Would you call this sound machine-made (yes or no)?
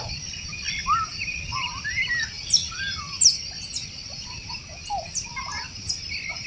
no